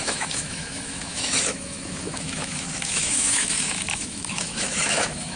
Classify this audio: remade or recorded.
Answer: remade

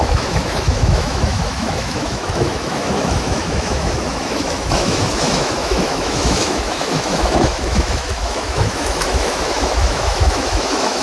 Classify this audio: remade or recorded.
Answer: remade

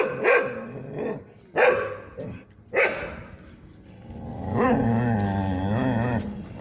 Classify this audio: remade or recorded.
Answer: recorded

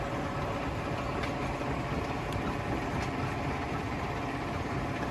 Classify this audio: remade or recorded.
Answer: recorded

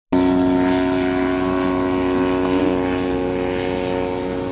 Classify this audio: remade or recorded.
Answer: recorded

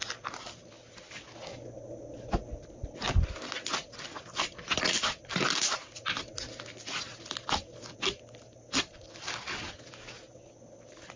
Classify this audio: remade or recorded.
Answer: recorded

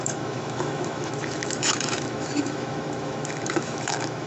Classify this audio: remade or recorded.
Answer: remade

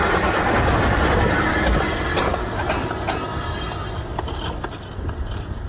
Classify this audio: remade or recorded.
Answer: recorded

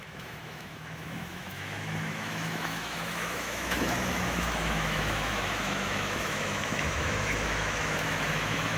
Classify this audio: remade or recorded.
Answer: remade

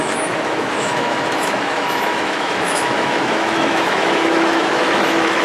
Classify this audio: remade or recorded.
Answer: remade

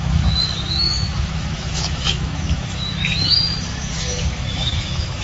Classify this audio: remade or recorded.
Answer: remade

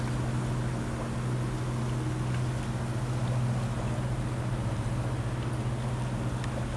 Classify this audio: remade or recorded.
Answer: recorded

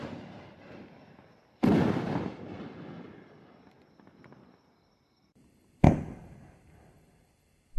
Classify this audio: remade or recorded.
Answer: recorded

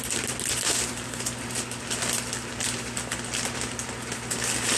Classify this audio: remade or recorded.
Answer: recorded